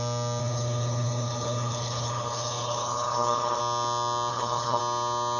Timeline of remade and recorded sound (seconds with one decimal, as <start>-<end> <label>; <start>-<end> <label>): 0.0-0.4 recorded; 0.4-3.6 remade; 3.6-4.3 recorded; 4.3-4.8 remade; 4.8-5.4 recorded